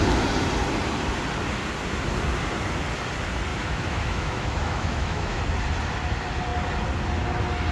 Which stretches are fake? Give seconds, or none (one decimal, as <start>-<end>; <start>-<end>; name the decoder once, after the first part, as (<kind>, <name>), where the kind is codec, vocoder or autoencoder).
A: 3.5-5.4 (autoencoder, DAC-VAE)

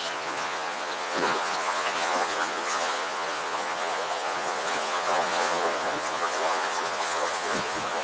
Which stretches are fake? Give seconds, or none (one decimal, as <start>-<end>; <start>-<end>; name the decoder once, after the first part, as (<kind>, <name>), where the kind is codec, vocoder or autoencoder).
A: 0.0-8.0 (vocoder, Vocos)

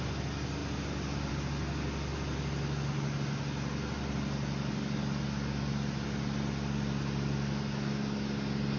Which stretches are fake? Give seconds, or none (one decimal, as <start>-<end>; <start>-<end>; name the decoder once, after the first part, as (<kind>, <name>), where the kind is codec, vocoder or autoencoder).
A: none

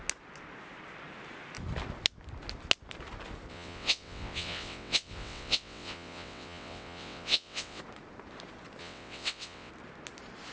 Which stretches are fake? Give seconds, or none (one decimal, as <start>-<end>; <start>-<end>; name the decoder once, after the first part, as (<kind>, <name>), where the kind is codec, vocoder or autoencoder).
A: 3.5-7.8 (vocoder, WaveNeXt); 8.8-9.7